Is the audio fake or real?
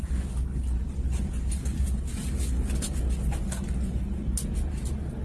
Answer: real